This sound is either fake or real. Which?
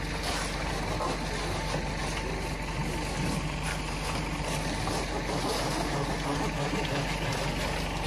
real